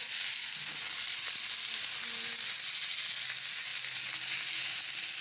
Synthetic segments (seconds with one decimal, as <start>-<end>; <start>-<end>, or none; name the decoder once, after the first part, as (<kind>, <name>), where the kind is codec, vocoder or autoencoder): none